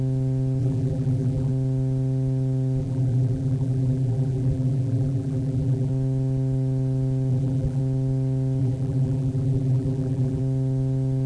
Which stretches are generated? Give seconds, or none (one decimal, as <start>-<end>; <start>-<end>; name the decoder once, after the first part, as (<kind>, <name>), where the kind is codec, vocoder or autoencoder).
0.6-1.5 (vocoder, BigVGAN v2); 2.8-5.9; 7.3-7.8; 8.6-10.4